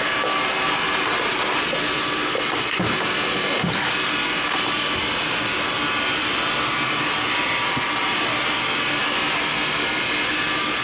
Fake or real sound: real